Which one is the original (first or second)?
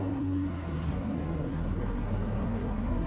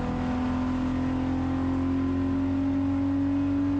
second